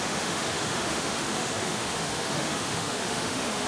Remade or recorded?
remade